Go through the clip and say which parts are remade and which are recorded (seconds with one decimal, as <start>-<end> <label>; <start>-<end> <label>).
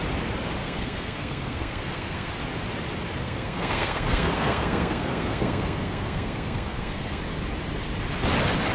0.0-0.6 recorded; 0.6-2.3 remade; 2.3-3.2 recorded; 3.2-7.2 remade; 7.2-8.7 recorded